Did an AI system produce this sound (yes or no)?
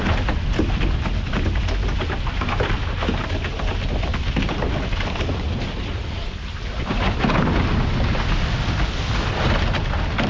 no